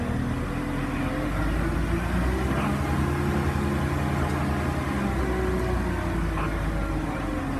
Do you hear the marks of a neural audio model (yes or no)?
no